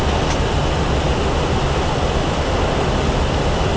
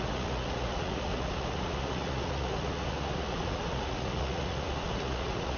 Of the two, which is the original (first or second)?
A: first